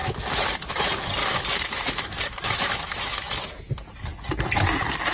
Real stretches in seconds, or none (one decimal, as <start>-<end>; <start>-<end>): 0.0-1.2; 3.6-5.1

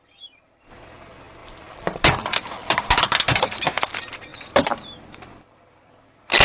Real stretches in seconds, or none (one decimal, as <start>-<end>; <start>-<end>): 0.0-1.4; 3.7-4.3; 5.3-6.4